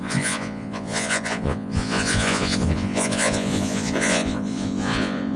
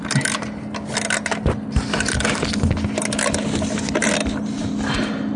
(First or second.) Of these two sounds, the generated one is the first